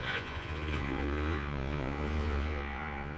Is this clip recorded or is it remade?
remade